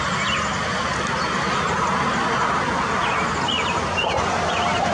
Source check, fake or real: real